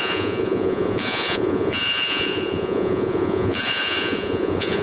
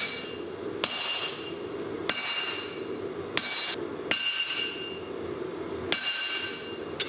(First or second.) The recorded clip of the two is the second